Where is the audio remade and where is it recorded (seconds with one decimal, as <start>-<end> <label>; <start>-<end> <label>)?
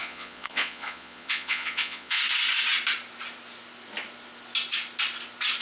0.0-2.2 remade; 2.2-5.6 recorded